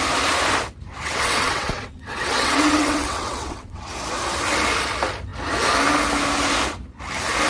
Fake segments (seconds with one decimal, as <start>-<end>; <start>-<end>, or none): 0.9-3.9